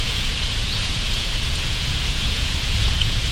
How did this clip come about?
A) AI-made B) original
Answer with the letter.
A